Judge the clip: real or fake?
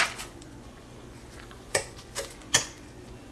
fake